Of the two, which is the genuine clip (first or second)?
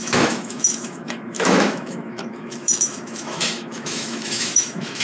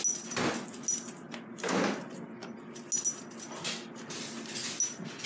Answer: second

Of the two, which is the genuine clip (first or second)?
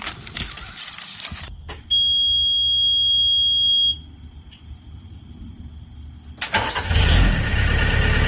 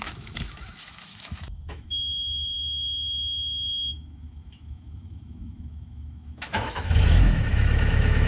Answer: first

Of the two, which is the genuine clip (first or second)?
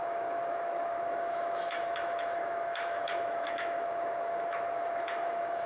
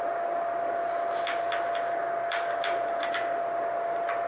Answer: second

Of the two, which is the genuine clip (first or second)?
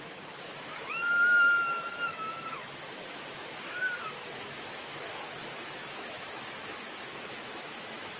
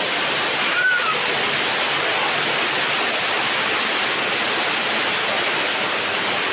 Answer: second